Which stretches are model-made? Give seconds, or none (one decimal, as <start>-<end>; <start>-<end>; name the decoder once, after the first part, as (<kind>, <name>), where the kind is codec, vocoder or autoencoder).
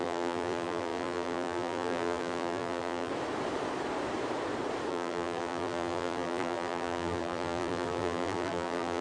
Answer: 0.0-3.1 (vocoder, BigVGAN v2); 4.9-9.0